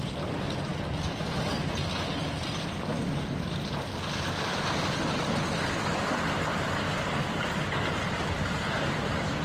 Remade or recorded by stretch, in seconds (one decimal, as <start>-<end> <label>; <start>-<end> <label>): 0.0-0.7 remade; 0.7-2.4 recorded; 2.4-9.4 remade